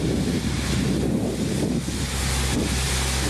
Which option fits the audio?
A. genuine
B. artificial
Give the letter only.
A